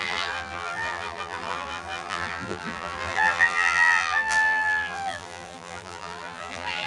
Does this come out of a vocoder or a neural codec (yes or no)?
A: yes